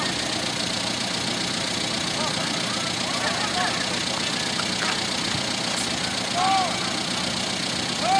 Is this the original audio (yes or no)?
yes